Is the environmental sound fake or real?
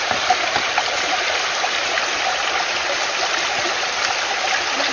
real